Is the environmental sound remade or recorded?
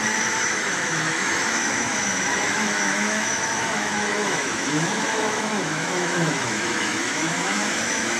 remade